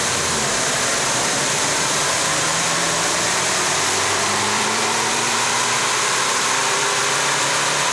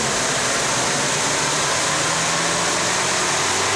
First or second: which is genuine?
second